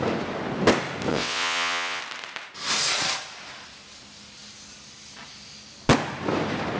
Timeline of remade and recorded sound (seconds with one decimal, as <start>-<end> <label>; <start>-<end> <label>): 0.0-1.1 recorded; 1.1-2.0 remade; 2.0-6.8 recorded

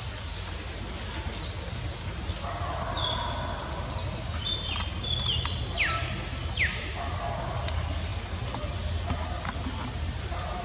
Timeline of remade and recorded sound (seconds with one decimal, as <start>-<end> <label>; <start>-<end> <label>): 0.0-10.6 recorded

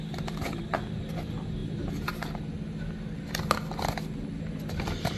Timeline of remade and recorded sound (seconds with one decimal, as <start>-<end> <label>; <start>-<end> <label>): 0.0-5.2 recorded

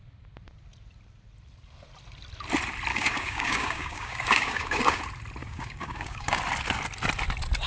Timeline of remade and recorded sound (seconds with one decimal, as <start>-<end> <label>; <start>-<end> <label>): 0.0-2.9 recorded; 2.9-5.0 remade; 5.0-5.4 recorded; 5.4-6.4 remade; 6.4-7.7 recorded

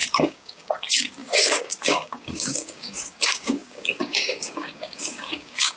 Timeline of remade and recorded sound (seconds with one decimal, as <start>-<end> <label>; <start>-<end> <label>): 0.0-5.8 remade